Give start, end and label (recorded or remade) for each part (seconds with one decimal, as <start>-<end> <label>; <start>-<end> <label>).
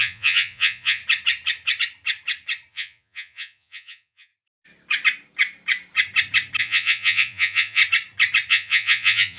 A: 0.0-1.0 remade; 1.0-2.7 recorded; 2.7-4.3 remade; 4.3-6.6 recorded; 6.6-7.8 remade; 7.8-8.5 recorded; 8.5-9.4 remade